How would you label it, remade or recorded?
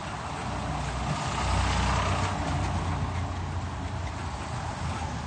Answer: recorded